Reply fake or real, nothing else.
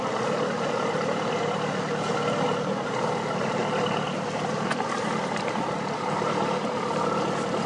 real